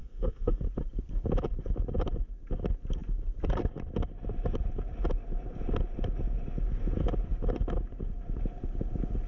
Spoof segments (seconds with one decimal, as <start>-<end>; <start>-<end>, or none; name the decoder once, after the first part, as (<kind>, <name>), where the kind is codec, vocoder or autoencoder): 0.0-0.6 (codec, SNAC)